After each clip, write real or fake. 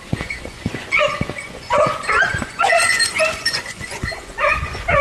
fake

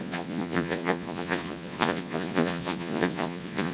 fake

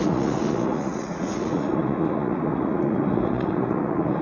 fake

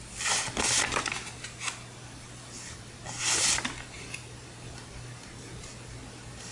real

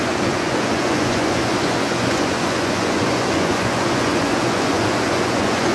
fake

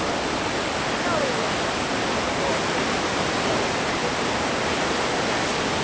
real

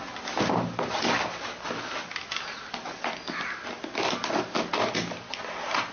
real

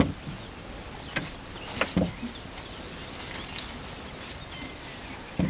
real